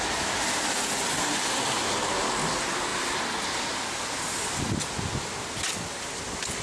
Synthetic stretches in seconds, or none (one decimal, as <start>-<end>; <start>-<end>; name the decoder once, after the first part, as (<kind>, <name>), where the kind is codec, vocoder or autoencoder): 2.9-3.7 (vocoder, BigVGAN v2)